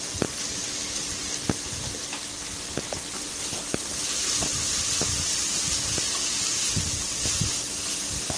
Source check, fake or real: real